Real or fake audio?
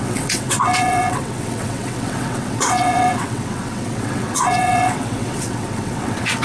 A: fake